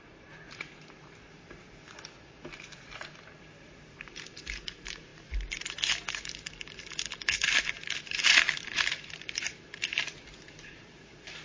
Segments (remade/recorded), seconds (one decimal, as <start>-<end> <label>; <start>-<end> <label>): 0.0-11.4 remade